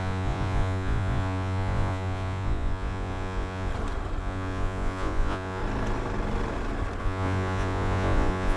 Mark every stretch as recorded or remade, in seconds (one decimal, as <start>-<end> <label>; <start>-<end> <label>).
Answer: 0.0-3.7 remade; 3.7-4.2 recorded; 4.2-5.6 remade; 5.6-7.0 recorded; 7.0-8.6 remade